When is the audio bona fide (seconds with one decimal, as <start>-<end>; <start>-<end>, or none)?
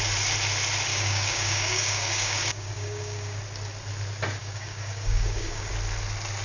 0.0-0.9; 3.4-4.4; 5.7-6.4